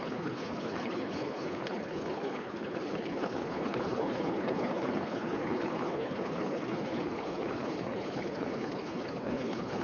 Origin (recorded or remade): remade